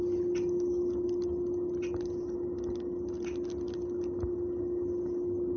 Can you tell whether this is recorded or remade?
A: recorded